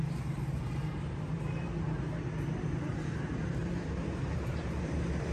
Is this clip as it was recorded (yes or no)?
no